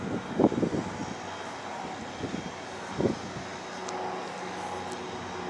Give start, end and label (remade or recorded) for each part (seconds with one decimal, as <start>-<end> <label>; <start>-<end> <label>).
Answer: 0.0-5.5 recorded